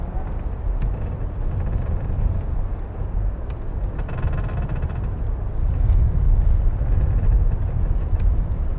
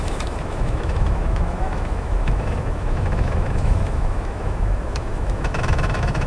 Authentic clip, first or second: first